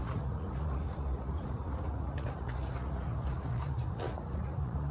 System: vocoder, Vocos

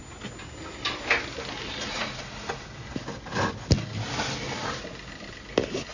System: none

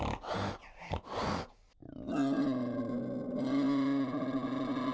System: none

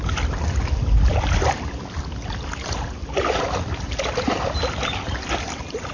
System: none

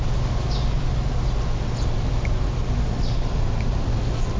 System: none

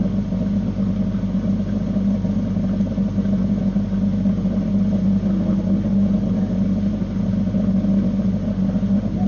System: none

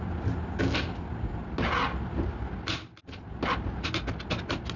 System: none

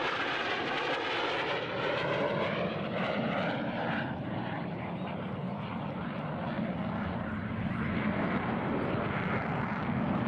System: none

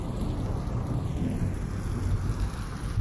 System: none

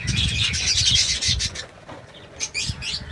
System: vocoder, Vocos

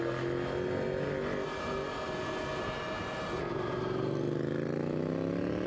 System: none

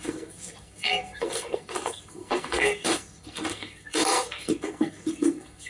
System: codec, SNAC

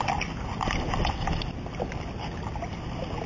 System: none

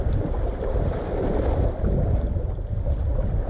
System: none